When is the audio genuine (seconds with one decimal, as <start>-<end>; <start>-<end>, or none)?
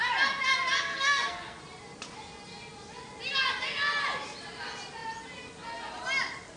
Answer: 0.0-0.9; 1.6-6.6